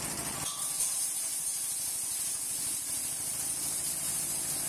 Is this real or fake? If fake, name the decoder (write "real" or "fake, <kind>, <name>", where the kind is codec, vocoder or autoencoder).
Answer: real